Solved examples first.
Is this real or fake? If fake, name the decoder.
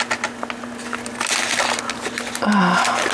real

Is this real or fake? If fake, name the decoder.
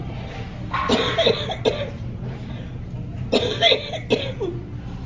real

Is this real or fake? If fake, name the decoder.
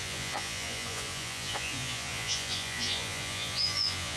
fake, vocoder, Vocos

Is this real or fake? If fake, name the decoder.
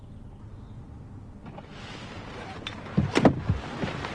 real